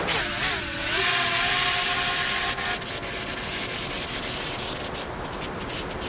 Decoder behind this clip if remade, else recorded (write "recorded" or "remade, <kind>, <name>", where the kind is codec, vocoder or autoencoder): recorded